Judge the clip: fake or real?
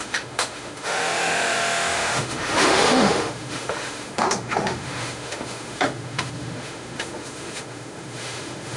fake